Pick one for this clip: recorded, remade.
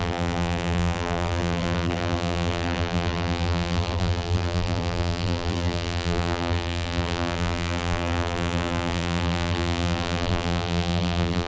remade